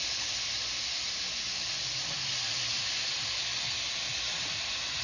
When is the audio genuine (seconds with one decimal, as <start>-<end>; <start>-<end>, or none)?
0.0-5.0